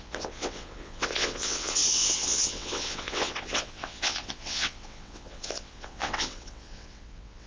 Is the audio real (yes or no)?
no